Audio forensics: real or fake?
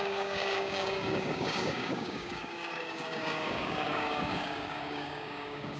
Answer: fake